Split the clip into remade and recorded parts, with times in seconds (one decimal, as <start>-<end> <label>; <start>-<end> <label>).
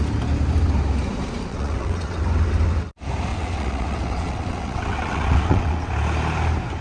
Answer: 0.0-1.5 recorded; 1.5-2.2 remade; 2.2-3.3 recorded; 3.3-5.9 remade; 5.9-6.8 recorded